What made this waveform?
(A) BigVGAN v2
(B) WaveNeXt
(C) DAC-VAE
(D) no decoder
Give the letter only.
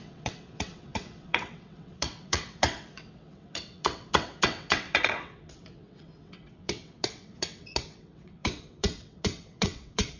B